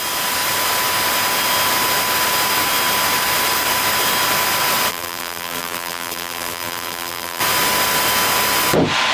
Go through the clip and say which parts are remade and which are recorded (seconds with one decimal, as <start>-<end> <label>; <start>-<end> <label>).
0.0-4.9 recorded; 4.9-7.4 remade; 7.4-9.1 recorded